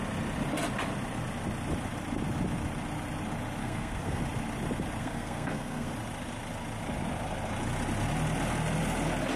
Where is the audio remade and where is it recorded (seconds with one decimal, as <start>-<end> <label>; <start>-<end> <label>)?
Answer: 0.0-3.6 recorded; 3.6-4.2 remade; 4.2-5.0 recorded; 5.0-5.9 remade; 5.9-9.4 recorded